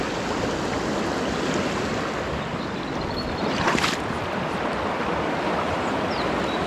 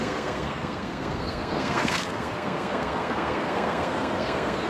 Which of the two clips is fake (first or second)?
second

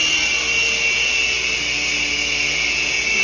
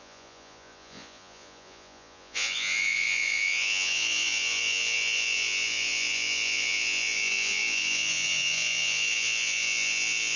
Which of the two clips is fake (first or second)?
second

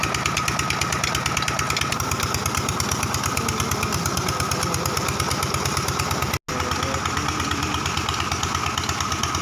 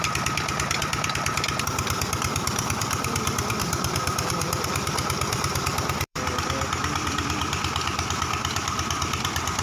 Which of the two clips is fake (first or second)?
second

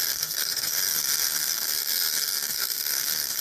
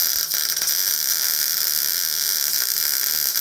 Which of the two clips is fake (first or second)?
first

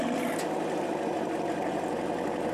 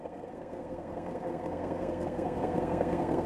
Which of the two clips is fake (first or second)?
second